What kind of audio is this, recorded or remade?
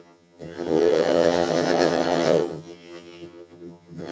remade